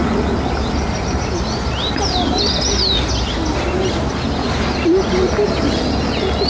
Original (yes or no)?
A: yes